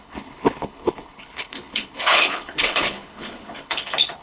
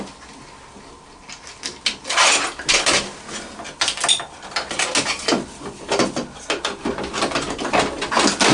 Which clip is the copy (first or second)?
first